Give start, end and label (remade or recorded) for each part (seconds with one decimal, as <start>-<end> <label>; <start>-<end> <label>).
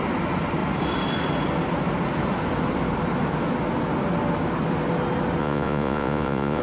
0.0-5.4 recorded; 5.4-6.6 remade